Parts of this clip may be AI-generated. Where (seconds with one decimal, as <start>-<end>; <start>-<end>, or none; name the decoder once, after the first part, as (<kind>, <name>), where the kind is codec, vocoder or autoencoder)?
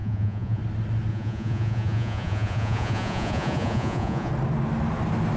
0.0-0.6 (vocoder, Vocos); 1.1-4.3